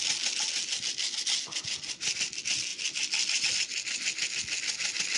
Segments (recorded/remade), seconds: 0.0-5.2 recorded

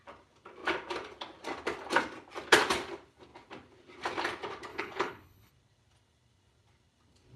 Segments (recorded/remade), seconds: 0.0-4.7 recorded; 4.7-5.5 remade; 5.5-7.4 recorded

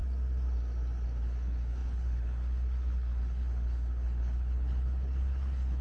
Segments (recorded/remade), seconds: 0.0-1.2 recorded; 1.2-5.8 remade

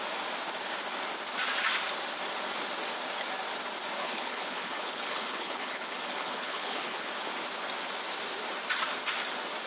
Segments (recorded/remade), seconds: 0.0-4.0 recorded; 4.0-7.1 remade; 7.1-9.7 recorded